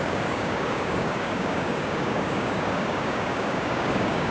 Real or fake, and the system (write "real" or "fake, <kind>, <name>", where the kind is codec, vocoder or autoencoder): fake, codec, DAC